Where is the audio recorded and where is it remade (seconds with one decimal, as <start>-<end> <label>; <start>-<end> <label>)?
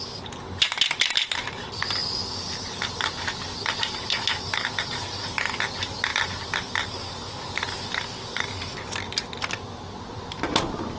0.0-11.0 recorded